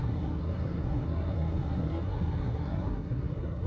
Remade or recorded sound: remade